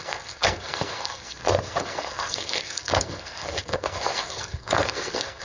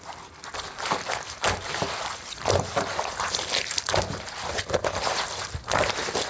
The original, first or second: second